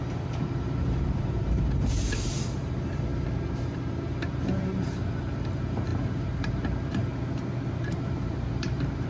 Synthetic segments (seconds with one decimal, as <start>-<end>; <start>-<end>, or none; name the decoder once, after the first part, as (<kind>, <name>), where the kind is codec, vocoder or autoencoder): 0.0-7.1 (vocoder, BigVGAN v2); 7.9-9.1